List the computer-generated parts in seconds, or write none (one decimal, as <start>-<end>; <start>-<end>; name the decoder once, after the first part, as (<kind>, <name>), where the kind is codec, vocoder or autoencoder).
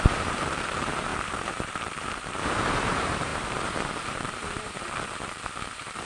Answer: 0.0-6.1 (vocoder, BigVGAN v2)